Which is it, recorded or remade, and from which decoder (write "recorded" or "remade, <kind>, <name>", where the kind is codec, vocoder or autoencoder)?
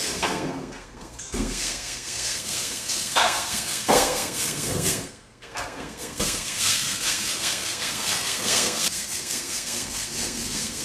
remade, codec, SNAC